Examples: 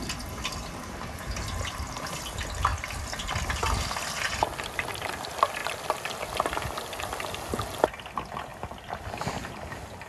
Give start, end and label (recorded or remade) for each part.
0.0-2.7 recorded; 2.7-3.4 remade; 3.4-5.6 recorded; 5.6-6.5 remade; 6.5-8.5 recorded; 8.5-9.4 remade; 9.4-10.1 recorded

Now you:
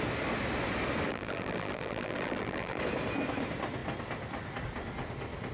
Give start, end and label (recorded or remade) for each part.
0.0-1.1 recorded; 1.1-2.8 remade; 2.8-5.5 recorded

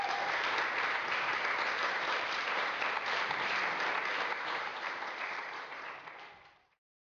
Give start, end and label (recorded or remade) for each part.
0.0-1.0 remade; 1.0-1.8 recorded; 1.8-3.6 remade; 3.6-4.3 recorded; 4.3-7.0 remade

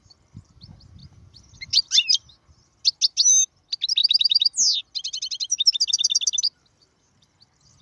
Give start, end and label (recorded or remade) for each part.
0.0-7.8 recorded

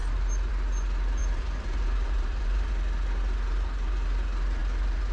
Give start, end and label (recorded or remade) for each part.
0.0-1.2 recorded; 1.2-2.7 remade; 2.7-4.6 recorded; 4.6-5.1 remade

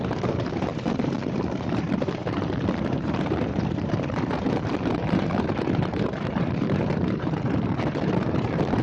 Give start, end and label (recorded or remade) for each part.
0.0-8.8 remade

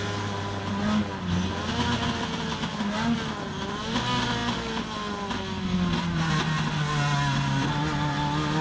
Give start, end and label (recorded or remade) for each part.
0.0-8.6 recorded